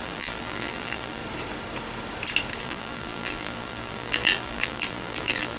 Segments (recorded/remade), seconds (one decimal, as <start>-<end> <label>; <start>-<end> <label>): 0.0-1.2 remade; 1.2-2.6 recorded; 2.6-5.6 remade